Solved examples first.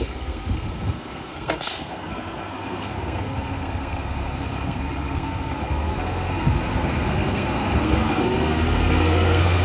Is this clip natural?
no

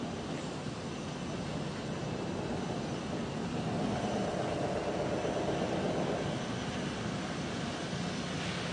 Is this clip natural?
yes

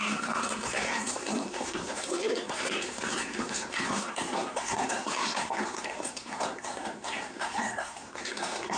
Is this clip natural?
no